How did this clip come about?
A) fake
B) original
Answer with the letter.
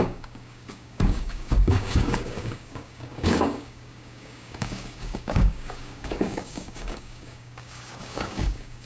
A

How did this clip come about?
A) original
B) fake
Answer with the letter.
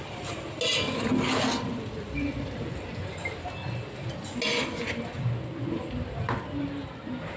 A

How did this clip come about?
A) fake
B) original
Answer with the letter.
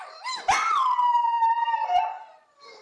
B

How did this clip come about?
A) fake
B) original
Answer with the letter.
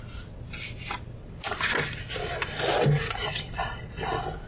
B